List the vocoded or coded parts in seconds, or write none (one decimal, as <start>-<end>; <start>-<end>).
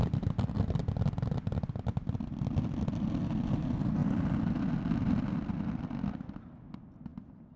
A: none